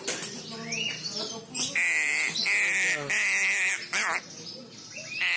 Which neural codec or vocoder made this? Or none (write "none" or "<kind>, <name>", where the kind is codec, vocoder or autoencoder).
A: none